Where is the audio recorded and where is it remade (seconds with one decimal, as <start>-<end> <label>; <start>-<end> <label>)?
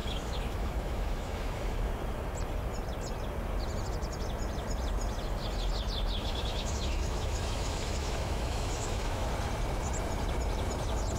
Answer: 0.0-1.9 remade; 1.9-6.2 recorded; 6.2-9.3 remade; 9.3-11.2 recorded